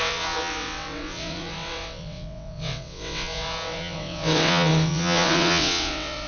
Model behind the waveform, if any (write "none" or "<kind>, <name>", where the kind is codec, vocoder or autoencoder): vocoder, WaveNeXt